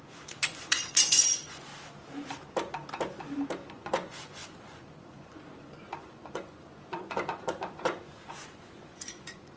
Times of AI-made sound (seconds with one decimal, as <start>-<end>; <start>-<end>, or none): 0.0-1.7; 3.7-9.6